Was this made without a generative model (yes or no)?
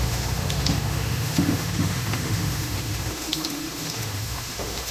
no